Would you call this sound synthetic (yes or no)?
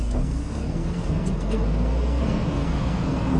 yes